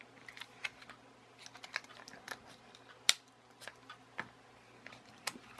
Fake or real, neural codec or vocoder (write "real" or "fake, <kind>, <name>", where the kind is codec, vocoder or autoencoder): real